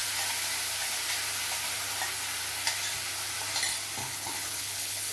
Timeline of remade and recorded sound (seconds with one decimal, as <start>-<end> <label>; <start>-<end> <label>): 0.0-4.0 recorded; 4.0-5.1 remade